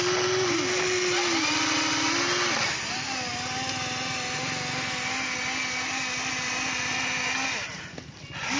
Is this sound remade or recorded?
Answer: recorded